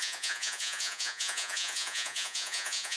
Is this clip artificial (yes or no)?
yes